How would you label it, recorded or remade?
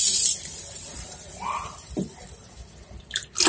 remade